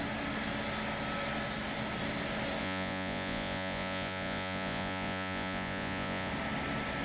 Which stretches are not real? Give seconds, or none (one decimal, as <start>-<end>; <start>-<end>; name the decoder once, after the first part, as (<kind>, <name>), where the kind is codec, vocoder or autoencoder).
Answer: 2.6-6.3 (vocoder, Vocos)